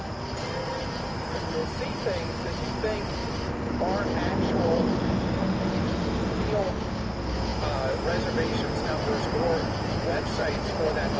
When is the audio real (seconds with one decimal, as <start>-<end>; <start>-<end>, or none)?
0.0-11.2